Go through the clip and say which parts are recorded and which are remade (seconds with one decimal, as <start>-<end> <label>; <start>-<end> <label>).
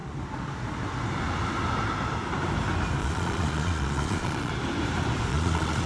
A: 0.0-3.0 recorded; 3.0-4.5 remade; 4.5-5.3 recorded; 5.3-5.9 remade